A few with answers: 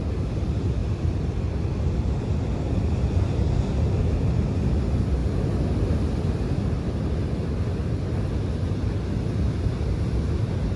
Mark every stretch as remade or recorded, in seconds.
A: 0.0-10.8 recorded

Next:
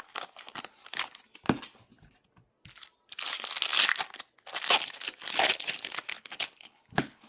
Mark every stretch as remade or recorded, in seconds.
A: 0.0-6.1 recorded; 6.1-7.3 remade

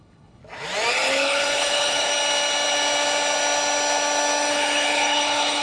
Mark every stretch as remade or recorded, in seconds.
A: 0.0-0.4 remade; 0.4-0.9 recorded; 0.9-2.1 remade; 2.1-4.5 recorded; 4.5-5.6 remade